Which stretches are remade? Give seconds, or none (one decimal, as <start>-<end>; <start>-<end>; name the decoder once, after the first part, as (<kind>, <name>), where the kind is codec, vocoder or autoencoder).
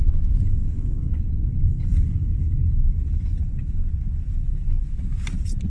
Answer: none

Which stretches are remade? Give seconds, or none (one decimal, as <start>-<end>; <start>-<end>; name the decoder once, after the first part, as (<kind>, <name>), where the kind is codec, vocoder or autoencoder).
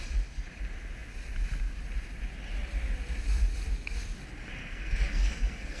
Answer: 4.6-5.8 (codec, SNAC)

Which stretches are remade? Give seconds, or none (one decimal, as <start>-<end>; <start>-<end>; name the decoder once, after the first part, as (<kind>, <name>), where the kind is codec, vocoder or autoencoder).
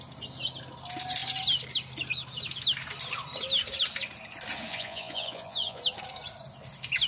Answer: 4.7-5.8 (vocoder, Vocos)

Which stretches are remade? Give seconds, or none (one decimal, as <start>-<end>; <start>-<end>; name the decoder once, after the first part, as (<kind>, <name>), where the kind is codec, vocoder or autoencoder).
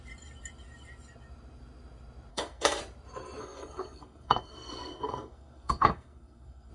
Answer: 2.3-2.8 (codec, SNAC); 3.4-6.7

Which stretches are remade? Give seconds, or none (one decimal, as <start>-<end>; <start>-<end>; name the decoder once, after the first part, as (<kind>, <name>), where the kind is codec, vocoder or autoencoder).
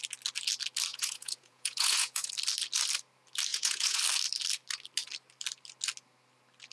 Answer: 0.9-2.3 (vocoder, Vocos); 3.5-4.0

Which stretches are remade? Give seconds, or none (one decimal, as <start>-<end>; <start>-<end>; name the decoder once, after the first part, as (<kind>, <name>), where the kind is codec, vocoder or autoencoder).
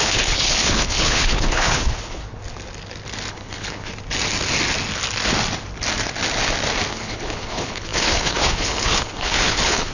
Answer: 0.0-2.2 (codec, HILCodec); 3.3-3.9; 6.9-9.9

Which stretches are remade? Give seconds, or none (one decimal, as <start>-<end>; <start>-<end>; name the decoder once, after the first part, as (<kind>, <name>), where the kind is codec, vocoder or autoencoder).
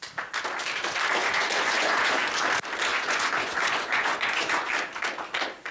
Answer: 1.2-2.3 (vocoder, Vocos); 2.9-4.7